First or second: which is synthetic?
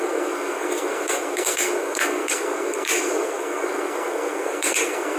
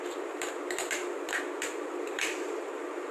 first